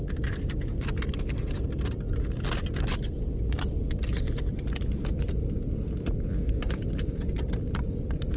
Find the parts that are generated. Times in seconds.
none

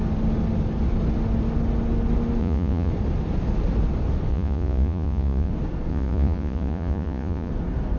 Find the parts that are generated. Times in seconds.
2.4-2.9 (vocoder, Vocos); 4.3-5.5; 5.9-7.5

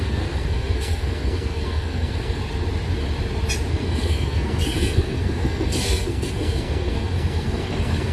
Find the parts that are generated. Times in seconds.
0.0-2.4 (codec, SNAC); 3.7-8.1

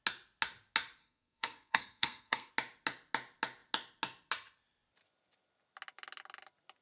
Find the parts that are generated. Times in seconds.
1.0-2.5 (codec, SNAC)